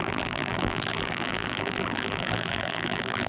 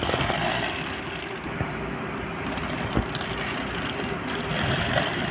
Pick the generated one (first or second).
first